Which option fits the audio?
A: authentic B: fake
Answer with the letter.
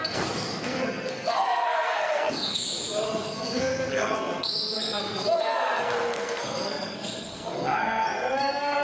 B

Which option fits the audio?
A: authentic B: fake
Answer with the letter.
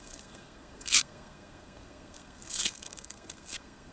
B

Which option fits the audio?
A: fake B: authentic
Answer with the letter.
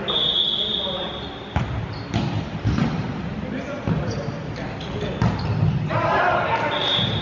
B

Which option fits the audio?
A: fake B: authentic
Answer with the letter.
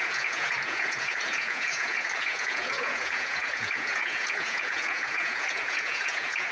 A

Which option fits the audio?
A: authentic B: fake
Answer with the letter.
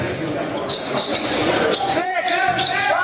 B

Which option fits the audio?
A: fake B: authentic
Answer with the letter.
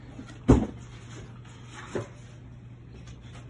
B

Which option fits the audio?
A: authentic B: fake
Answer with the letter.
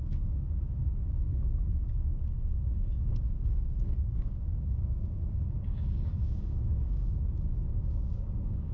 B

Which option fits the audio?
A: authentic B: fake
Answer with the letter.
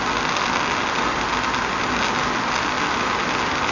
A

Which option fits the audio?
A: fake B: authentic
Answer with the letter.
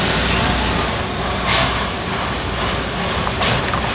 B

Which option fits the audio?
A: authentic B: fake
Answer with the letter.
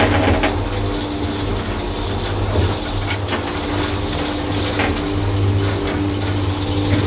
A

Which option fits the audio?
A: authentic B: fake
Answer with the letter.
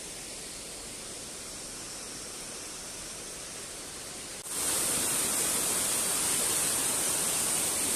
A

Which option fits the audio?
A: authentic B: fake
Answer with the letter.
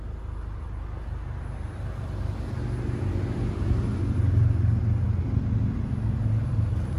A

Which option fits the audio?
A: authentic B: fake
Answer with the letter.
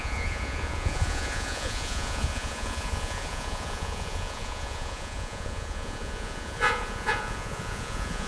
B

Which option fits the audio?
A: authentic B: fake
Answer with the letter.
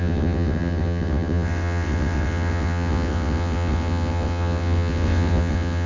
B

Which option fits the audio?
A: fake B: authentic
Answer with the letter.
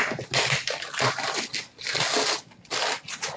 B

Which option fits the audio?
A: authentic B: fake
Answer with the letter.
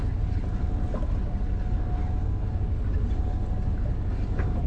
A